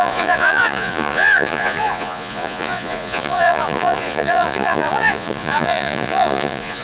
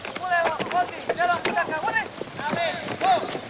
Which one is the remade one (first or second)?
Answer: first